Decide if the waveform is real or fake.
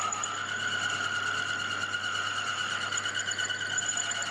real